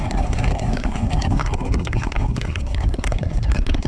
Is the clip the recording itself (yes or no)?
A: no